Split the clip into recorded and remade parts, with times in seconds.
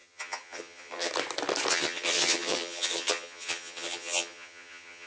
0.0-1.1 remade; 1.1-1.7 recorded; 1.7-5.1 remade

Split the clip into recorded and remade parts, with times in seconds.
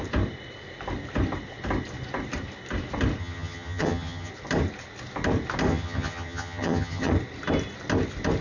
0.0-3.2 recorded; 3.2-4.3 remade; 4.3-5.7 recorded; 5.7-7.1 remade; 7.1-8.4 recorded